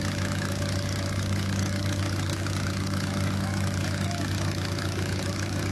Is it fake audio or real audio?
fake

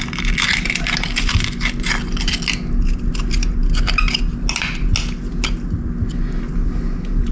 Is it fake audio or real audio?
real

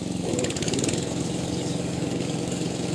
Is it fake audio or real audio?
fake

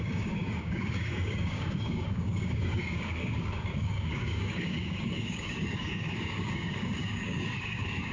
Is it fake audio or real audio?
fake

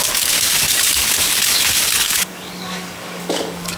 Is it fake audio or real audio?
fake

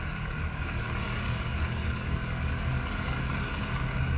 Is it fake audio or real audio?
fake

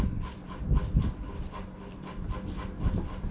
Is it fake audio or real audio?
real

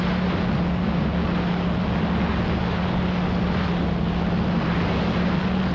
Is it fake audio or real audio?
real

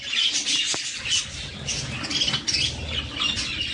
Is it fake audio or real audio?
real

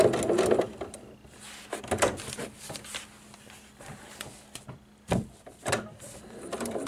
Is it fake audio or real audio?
real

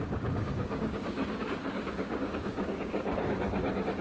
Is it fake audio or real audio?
fake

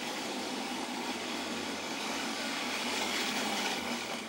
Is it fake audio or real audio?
fake